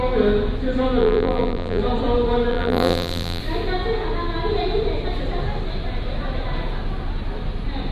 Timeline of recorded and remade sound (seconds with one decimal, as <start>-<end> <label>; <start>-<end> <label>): 0.0-1.0 recorded; 1.0-1.8 remade; 1.8-2.5 recorded; 2.5-3.4 remade; 3.4-7.9 recorded